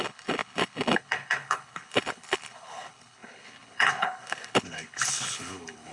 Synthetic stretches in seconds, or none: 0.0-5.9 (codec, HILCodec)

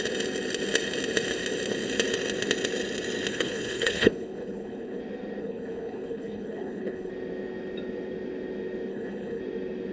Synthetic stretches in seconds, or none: 3.3-5.0 (codec, HILCodec); 5.4-7.1; 8.9-9.4

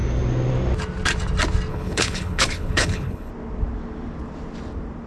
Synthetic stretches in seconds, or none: 1.7-3.3 (codec, HILCodec)

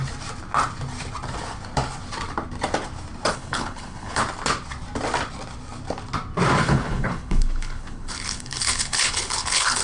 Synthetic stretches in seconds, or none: 3.3-4.2 (codec, HILCodec); 6.6-9.8

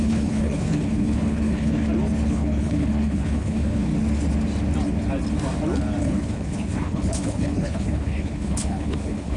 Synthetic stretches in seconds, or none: 0.0-1.8 (codec, HILCodec); 2.3-3.9; 6.0-9.4